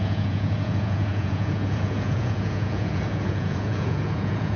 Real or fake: fake